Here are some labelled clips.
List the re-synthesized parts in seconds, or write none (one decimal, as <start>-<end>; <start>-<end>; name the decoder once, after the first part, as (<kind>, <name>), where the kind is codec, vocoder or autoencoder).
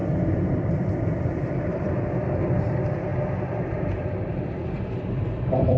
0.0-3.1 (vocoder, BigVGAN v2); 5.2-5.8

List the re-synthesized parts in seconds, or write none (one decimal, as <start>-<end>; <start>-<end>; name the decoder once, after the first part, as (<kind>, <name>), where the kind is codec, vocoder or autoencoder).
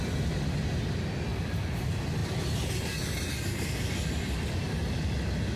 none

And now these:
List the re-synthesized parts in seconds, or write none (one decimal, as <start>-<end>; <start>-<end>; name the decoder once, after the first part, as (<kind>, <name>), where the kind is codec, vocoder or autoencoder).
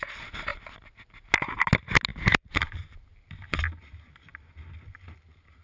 2.1-3.0 (vocoder, BigVGAN v2)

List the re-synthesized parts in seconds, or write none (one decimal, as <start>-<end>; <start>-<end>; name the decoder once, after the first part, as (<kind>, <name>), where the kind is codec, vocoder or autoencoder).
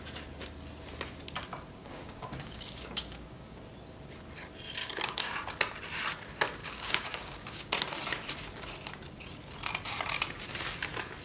1.8-3.6 (codec, DAC); 4.8-5.3; 6.6-7.7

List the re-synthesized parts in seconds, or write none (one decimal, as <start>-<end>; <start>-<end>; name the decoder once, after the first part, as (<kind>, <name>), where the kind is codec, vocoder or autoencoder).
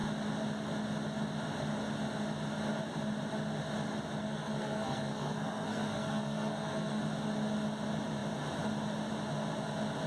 4.2-7.0 (codec, SNAC)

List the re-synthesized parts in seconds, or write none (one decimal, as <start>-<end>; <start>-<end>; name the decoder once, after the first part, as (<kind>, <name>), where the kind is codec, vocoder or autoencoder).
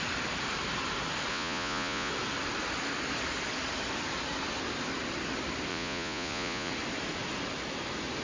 1.3-2.1 (vocoder, Vocos); 5.7-6.7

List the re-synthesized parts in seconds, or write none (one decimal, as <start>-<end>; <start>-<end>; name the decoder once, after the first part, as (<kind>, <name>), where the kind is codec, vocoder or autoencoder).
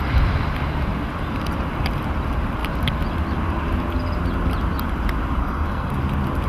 5.4-5.9 (codec, SNAC)